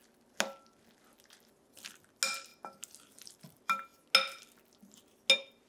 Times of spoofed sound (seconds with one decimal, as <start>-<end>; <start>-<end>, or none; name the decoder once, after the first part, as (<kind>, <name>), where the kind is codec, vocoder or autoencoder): none